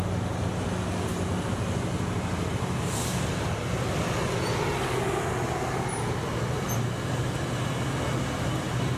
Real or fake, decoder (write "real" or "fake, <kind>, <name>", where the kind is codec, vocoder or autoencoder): real